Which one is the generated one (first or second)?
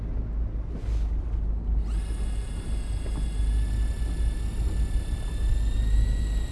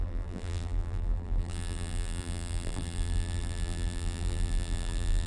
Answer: second